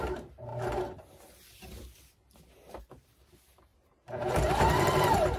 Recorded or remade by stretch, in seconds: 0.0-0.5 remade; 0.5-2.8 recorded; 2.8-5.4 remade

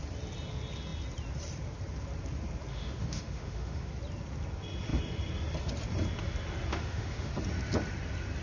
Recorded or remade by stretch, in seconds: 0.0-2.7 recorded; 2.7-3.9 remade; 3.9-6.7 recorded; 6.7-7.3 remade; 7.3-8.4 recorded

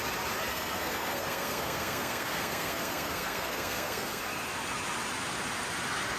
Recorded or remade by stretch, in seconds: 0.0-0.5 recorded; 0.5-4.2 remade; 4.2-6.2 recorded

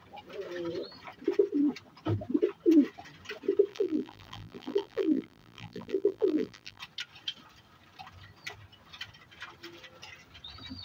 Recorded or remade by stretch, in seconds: 0.0-3.7 recorded; 3.7-6.8 remade; 6.8-10.8 recorded

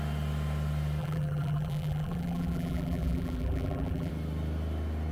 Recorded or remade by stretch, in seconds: 0.0-1.0 recorded; 1.0-4.1 remade; 4.1-5.1 recorded

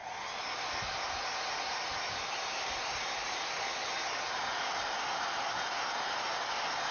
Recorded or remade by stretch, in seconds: 0.0-6.9 recorded

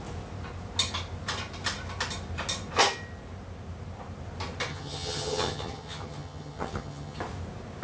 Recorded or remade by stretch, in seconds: 0.0-4.7 recorded; 4.7-7.2 remade; 7.2-7.8 recorded

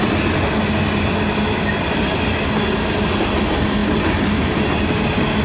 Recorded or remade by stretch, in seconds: 0.0-5.4 recorded